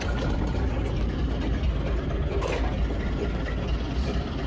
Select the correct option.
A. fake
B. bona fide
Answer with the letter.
B